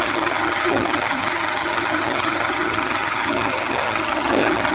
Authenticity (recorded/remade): remade